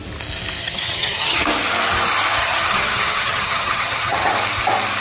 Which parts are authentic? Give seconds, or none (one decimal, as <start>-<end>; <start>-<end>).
0.0-0.6; 1.4-2.4; 4.3-5.0